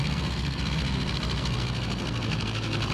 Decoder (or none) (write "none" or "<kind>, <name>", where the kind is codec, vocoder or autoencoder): codec, SNAC